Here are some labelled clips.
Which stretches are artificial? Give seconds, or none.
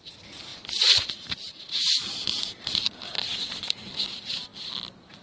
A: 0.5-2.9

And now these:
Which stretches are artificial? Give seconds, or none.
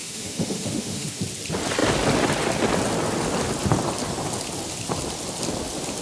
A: 0.0-1.2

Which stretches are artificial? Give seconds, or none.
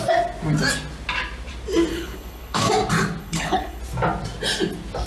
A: 1.9-2.6; 3.2-3.8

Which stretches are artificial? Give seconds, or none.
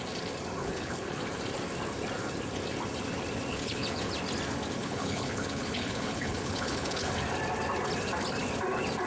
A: 0.6-1.2; 3.5-4.1; 4.8-7.1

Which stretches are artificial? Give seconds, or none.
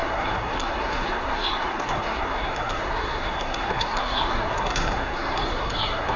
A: 0.0-6.2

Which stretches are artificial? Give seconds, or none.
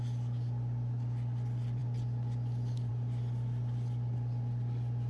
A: none